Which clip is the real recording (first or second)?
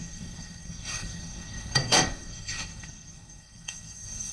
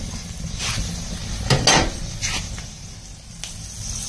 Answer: second